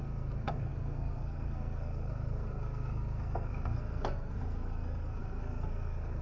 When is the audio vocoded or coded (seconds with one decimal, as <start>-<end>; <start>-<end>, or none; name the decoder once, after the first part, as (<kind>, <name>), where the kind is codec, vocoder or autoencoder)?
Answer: 0.0-6.2 (codec, SNAC)